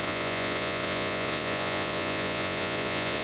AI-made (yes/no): yes